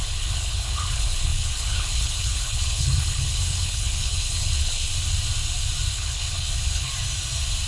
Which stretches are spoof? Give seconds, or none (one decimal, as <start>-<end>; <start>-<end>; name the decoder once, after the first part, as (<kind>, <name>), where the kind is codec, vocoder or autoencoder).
0.0-4.9 (codec, HILCodec); 5.9-6.9